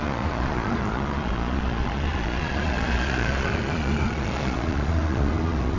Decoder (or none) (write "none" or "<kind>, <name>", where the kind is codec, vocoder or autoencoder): vocoder, Vocos